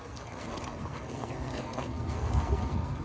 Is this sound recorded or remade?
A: remade